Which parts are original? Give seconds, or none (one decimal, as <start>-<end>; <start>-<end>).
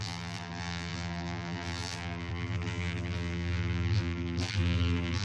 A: none